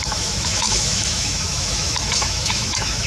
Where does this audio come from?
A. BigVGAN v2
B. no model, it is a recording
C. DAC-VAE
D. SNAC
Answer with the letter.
C